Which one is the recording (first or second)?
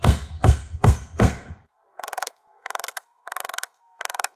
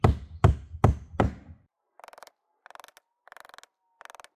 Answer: second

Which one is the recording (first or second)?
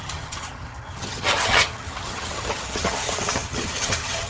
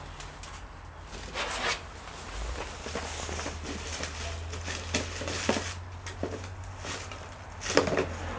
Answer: second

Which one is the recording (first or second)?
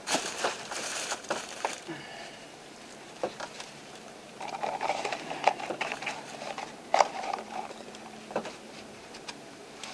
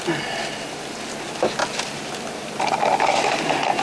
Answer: second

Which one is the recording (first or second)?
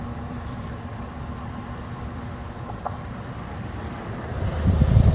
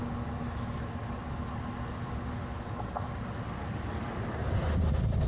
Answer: second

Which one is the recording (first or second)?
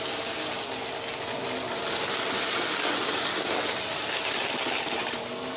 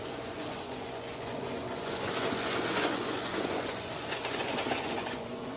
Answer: first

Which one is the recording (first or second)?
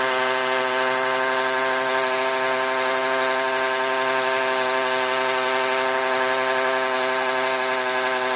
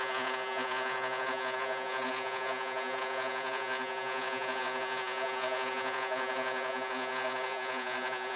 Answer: first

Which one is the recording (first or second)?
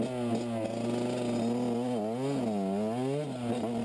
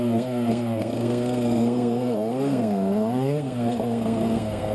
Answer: first